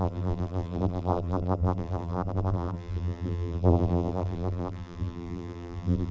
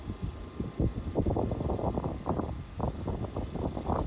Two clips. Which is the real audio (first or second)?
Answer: second